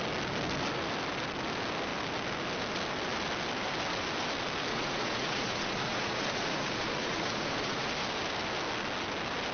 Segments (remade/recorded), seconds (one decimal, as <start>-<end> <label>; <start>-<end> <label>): 0.0-4.7 recorded; 4.7-7.9 remade; 7.9-9.5 recorded